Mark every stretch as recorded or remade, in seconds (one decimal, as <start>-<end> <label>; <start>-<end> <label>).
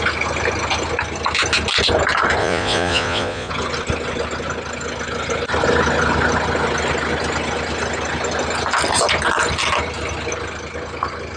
0.0-2.4 recorded; 2.4-3.5 remade; 3.5-11.4 recorded